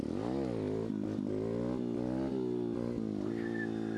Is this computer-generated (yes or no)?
no